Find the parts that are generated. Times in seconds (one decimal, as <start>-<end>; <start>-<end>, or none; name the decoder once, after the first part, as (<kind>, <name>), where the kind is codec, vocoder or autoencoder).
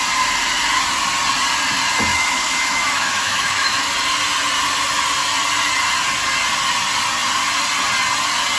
2.1-3.9 (autoencoder, DAC-VAE)